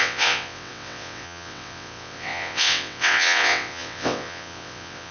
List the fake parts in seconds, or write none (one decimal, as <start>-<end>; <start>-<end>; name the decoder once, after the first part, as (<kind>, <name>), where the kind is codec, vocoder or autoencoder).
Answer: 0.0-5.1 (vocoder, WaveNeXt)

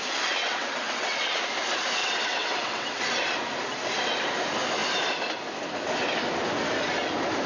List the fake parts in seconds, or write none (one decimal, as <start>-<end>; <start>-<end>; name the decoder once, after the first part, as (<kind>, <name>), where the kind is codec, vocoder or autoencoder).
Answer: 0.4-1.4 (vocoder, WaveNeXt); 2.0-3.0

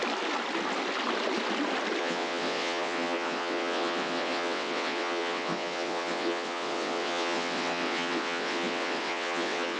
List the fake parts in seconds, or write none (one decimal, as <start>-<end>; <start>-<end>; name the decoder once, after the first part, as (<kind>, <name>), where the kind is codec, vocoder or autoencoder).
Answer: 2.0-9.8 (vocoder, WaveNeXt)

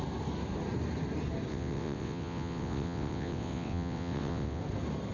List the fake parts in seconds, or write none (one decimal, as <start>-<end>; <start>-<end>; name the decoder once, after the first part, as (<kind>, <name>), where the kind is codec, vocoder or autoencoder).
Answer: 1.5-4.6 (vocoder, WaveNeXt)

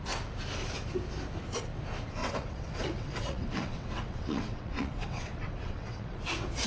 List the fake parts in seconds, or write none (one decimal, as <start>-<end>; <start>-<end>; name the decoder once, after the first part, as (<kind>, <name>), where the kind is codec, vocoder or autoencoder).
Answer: 2.2-6.2 (vocoder, WaveNeXt)

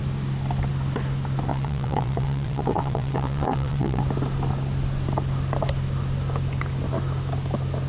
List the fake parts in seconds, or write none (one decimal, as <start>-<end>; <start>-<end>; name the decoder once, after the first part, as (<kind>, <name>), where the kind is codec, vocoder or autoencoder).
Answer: 1.5-4.0 (vocoder, WaveNeXt)